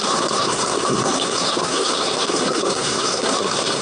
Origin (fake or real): fake